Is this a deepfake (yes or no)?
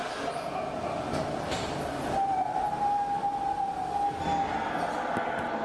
no